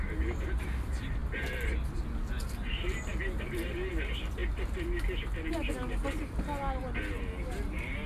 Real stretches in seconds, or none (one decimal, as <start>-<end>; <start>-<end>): 0.0-8.1